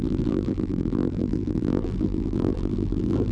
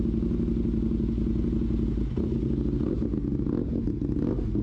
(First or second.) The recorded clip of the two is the second